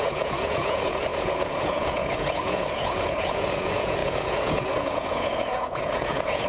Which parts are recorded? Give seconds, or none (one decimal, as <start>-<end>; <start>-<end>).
none